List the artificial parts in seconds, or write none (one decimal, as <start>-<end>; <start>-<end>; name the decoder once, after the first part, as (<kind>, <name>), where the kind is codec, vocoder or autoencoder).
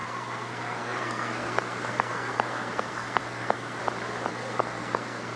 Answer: 0.0-3.8 (codec, SNAC); 4.3-5.4